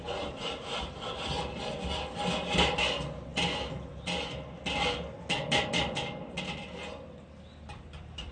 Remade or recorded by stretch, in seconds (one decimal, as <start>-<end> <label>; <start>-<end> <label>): 0.0-8.3 recorded